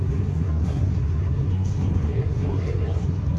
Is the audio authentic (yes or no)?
no